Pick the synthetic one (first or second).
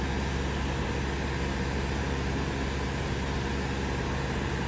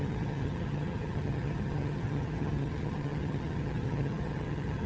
second